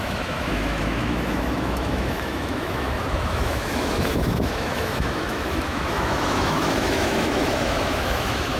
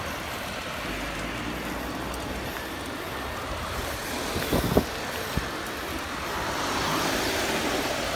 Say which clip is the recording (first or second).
second